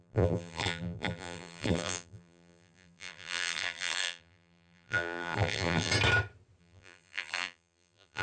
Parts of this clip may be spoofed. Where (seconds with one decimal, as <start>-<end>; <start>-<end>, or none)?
0.0-5.9; 6.6-8.2